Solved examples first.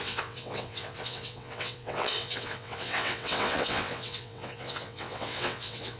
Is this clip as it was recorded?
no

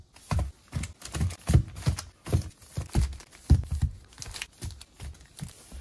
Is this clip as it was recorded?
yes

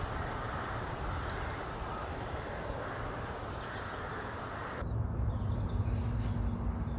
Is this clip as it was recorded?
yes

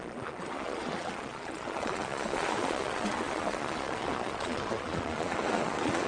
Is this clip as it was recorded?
no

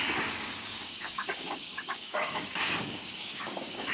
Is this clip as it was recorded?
no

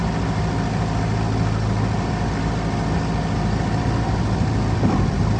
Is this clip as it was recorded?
yes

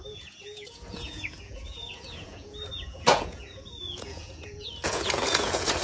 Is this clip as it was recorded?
no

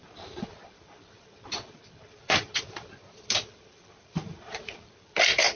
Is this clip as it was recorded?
yes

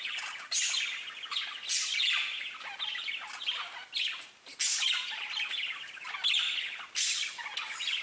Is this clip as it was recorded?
yes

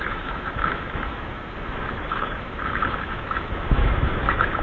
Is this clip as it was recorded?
no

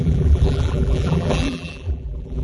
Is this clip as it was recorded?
no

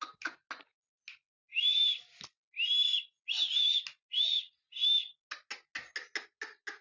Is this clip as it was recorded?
yes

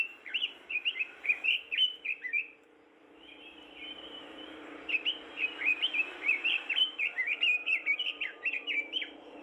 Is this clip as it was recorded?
no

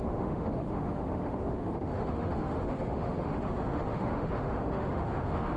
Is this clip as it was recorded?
no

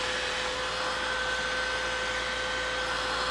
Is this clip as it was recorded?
yes